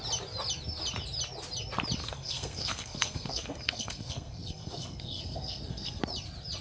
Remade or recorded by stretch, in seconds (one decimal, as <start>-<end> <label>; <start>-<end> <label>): 0.0-2.0 recorded; 2.0-6.0 remade; 6.0-6.6 recorded